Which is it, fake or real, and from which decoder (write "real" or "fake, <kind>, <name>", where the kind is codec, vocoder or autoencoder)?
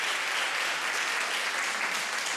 real